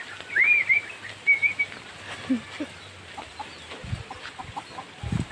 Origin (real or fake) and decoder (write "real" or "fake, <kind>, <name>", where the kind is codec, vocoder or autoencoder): real